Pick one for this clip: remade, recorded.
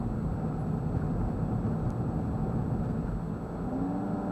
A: recorded